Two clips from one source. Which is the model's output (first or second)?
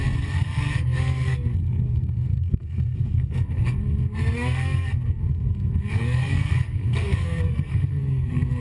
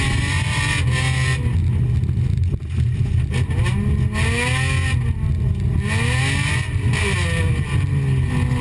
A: first